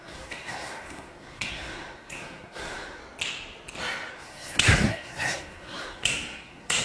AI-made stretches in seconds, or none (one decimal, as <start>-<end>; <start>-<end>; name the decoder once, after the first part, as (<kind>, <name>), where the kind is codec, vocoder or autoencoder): 0.0-3.0 (codec, SNAC); 4.1-6.8

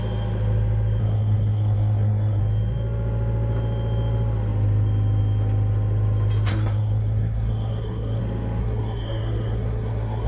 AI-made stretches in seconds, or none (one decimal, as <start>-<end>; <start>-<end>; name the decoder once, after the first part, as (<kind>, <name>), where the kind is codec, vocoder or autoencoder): 1.0-2.4 (codec, SNAC); 6.5-8.2; 8.6-10.3

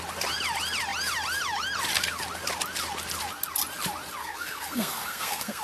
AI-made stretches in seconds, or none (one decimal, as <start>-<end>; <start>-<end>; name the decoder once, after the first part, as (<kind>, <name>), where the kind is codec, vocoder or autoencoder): 4.2-5.6 (codec, SNAC)

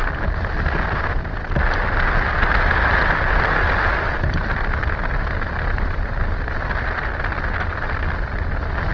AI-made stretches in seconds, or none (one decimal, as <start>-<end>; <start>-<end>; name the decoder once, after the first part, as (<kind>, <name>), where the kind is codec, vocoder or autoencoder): none

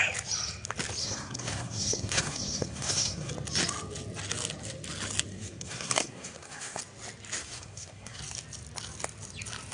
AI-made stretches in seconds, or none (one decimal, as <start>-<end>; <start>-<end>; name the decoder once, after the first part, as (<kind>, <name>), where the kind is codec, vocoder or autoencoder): 1.0-3.3 (codec, SNAC); 5.3-6.8; 7.4-8.2